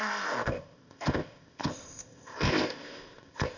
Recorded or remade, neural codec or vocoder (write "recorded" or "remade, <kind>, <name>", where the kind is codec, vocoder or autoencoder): remade, codec, ZipCodec